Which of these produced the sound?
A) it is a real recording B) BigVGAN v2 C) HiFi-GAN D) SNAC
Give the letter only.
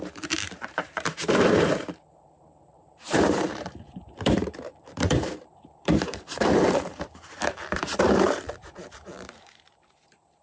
B